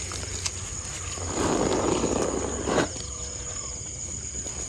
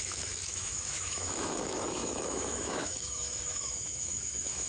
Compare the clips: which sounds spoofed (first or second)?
second